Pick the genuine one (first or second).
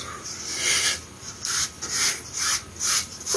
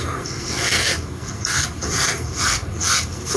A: first